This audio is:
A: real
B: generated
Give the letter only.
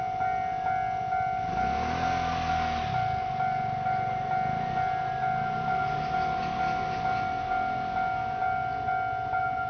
A